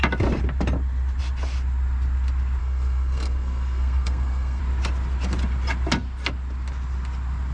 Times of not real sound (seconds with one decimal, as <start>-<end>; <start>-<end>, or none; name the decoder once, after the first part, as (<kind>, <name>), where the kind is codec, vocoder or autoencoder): 2.6-4.6 (codec, SNAC)